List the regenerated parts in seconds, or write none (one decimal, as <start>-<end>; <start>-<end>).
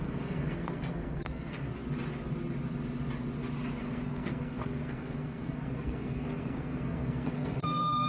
0.0-1.7; 3.8-8.1